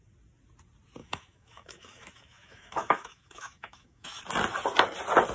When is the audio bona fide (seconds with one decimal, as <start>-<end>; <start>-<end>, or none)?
0.0-1.0; 4.2-5.3